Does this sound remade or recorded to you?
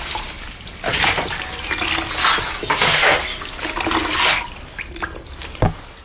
recorded